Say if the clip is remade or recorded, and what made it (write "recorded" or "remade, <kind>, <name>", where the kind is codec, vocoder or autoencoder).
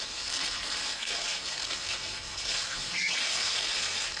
remade, codec, SNAC